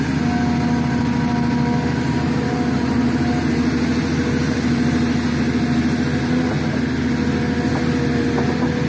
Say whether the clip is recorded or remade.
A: recorded